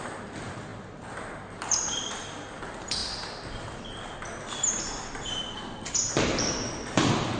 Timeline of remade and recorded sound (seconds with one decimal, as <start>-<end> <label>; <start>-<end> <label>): 0.0-0.7 remade; 0.7-1.7 recorded; 1.7-3.0 remade; 3.0-6.1 recorded; 6.1-7.4 remade